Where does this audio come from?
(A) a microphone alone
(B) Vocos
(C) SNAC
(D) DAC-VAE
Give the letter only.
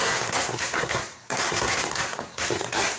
C